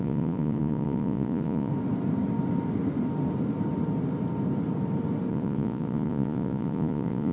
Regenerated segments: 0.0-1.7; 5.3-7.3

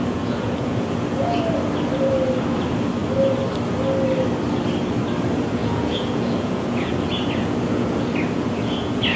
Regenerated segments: 0.0-1.4; 5.6-9.2

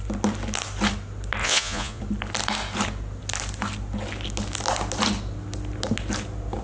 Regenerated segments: 1.4-2.0

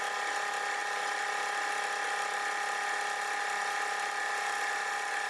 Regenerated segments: none

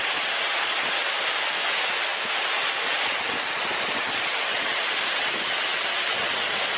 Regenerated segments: none

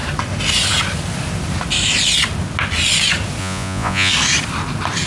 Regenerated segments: 3.4-4.1